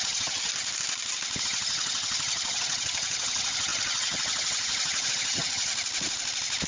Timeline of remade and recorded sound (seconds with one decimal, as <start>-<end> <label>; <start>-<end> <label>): 0.0-0.5 remade; 0.5-1.4 recorded; 1.4-5.7 remade; 5.7-6.7 recorded

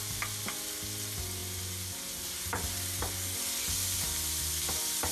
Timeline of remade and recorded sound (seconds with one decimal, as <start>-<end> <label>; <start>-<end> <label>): 0.0-5.1 recorded